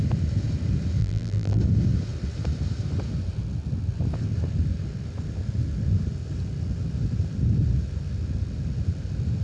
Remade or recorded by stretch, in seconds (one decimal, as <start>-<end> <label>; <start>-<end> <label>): 0.0-1.0 recorded; 1.0-1.6 remade; 1.6-9.4 recorded